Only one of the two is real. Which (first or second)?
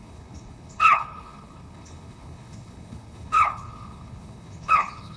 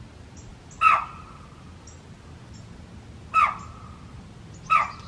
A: second